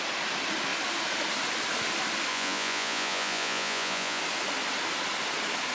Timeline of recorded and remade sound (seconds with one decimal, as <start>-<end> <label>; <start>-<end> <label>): 0.0-2.3 recorded; 2.3-4.2 remade; 4.2-5.7 recorded